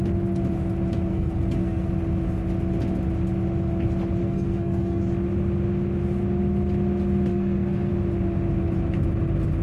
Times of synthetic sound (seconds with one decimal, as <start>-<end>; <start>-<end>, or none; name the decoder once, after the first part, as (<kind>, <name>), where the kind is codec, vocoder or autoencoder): 1.1-1.9 (codec, SNAC); 4.2-5.0; 7.3-7.9